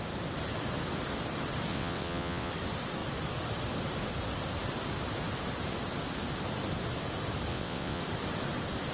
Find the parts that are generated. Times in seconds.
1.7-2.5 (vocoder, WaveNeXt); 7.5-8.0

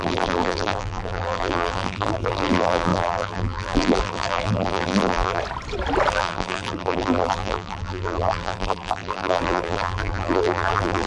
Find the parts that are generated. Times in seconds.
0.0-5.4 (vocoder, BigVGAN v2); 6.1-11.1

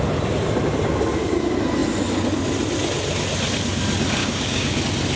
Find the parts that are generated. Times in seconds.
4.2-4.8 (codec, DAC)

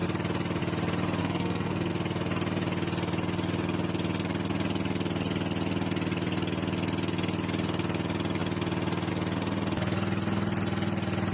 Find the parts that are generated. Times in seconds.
1.2-1.9 (codec, SNAC)

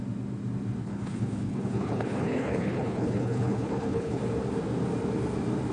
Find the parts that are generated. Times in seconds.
0.8-4.2 (codec, HILCodec)